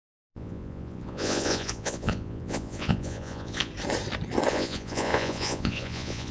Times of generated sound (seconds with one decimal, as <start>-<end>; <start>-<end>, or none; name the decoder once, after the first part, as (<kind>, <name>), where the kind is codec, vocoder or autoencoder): 0.0-3.7 (vocoder, Vocos); 4.5-6.3